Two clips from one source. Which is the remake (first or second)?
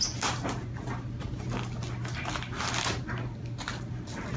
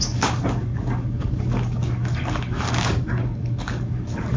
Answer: second